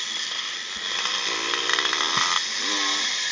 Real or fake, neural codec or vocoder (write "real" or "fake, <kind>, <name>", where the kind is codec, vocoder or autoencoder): real